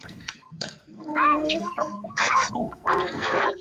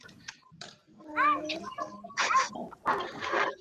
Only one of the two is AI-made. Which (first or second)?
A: first